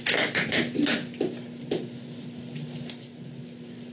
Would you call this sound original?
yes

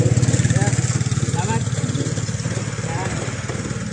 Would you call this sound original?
yes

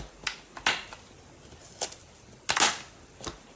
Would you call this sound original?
yes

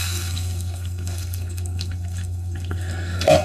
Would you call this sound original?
no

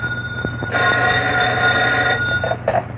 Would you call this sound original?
yes